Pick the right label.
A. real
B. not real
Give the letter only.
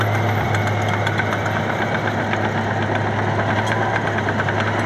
B